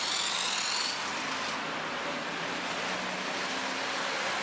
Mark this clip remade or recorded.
recorded